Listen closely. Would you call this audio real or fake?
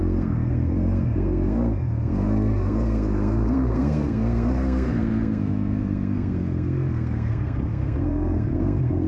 fake